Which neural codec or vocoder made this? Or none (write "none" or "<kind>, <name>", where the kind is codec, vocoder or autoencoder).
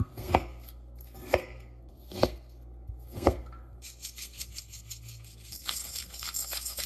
codec, SNAC